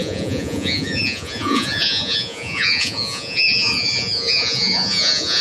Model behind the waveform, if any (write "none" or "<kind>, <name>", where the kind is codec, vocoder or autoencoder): vocoder, Vocos